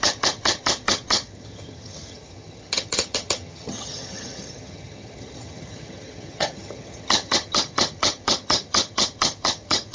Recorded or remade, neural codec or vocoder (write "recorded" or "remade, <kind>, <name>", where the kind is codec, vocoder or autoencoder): remade, vocoder, HiFi-GAN